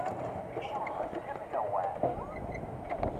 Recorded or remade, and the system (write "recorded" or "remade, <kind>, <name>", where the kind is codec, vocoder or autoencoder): recorded